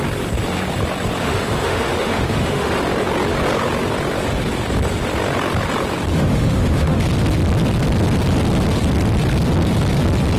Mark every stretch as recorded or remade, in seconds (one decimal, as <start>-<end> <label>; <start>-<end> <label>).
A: 0.0-1.2 recorded; 1.2-2.8 remade; 2.8-6.1 recorded; 6.1-7.0 remade; 7.0-10.4 recorded